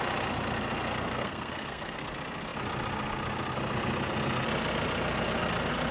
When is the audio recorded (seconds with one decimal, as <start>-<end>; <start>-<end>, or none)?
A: 0.0-1.1; 2.0-5.9